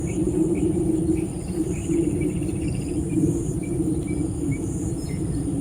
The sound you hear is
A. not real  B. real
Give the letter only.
A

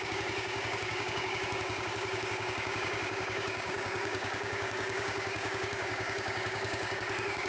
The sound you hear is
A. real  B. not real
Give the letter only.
B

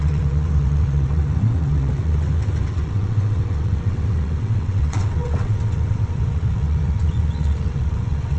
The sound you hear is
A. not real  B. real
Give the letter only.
A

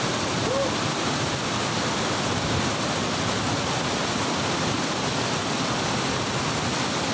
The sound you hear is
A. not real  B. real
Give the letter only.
B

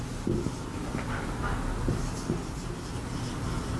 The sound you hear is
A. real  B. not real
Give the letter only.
A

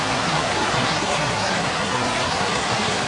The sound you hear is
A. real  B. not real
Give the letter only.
B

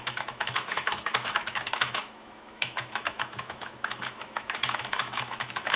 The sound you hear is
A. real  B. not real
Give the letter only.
B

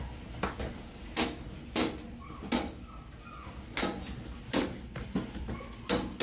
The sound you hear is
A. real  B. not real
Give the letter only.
A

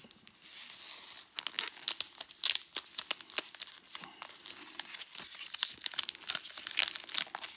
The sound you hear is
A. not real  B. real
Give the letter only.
B